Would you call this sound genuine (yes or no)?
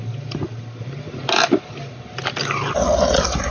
yes